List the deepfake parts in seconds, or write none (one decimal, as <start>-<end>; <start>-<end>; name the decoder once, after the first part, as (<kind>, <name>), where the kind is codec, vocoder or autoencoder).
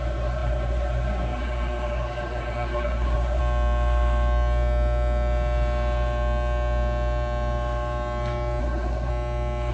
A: 0.0-3.4 (codec, SNAC); 8.6-9.1